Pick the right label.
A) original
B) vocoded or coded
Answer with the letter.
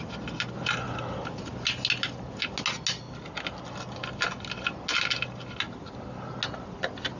A